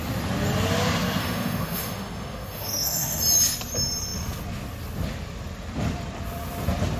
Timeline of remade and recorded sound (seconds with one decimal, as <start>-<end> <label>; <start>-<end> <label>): 0.0-1.2 recorded; 1.2-3.2 remade; 3.2-7.0 recorded